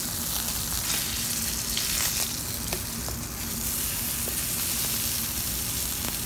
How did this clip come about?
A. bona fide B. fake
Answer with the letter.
A